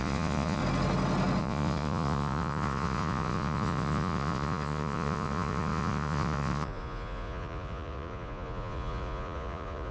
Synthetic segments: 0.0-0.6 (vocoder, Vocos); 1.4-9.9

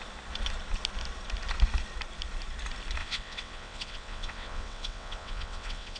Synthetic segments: 3.0-6.0 (vocoder, WaveNeXt)

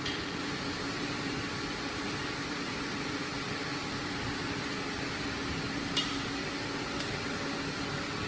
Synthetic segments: none

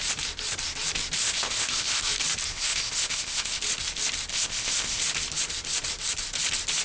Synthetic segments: 1.2-2.0 (codec, ZipCodec); 2.5-3.6; 4.3-5.0

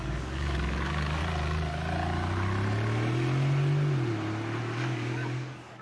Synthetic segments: 0.0-1.2 (codec, DAC); 4.6-5.8